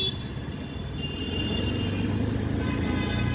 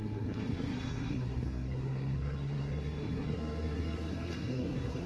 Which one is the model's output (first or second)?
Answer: second